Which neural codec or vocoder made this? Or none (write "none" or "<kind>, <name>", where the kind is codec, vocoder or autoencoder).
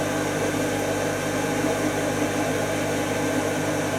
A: none